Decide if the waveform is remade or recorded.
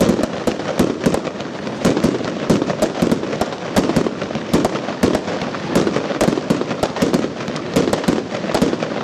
recorded